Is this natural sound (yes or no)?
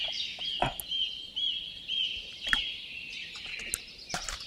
yes